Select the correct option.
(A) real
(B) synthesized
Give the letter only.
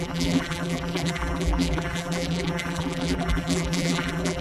B